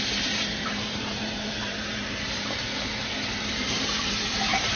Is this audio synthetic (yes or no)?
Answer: yes